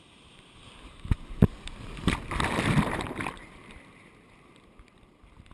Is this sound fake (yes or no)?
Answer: yes